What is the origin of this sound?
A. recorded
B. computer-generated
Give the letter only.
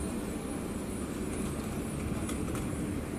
A